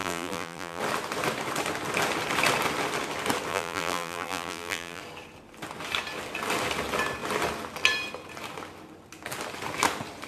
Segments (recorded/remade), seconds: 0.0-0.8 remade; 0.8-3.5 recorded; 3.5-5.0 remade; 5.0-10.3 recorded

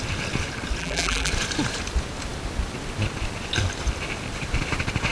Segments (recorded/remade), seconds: 0.0-0.8 recorded; 0.8-1.3 remade; 1.3-5.1 recorded